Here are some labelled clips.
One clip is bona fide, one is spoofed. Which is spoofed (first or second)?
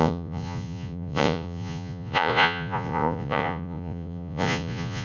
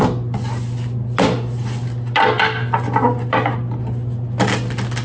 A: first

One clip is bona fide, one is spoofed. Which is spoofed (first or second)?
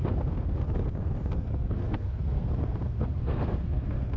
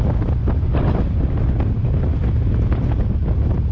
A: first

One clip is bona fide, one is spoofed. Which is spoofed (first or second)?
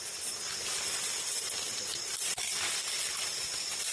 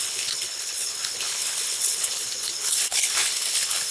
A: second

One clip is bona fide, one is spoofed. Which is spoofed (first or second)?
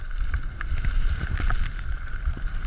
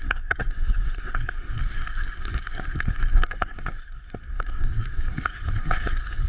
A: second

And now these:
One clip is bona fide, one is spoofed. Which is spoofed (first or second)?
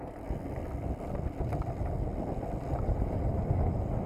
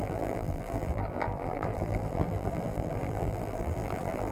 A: second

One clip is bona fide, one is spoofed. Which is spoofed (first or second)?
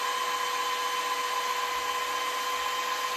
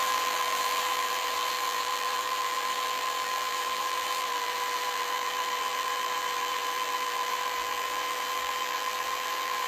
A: second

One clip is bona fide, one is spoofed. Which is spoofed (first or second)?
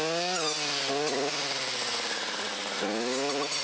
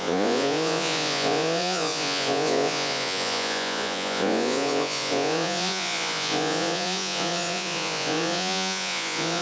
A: second